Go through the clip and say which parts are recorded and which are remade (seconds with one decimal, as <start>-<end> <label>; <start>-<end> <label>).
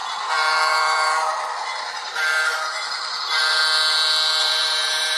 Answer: 0.0-3.6 remade; 3.6-4.4 recorded; 4.4-5.2 remade